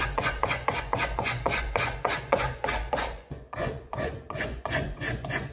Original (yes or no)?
no